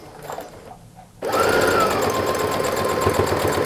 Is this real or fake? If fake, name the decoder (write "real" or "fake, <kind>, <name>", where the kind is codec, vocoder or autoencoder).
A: real